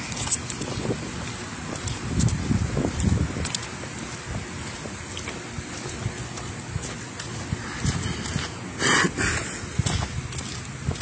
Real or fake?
real